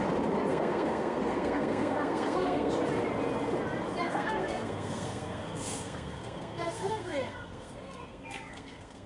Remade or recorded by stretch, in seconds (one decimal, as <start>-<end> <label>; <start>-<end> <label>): 0.0-0.5 recorded; 0.5-2.7 remade; 2.7-4.0 recorded; 4.0-9.1 remade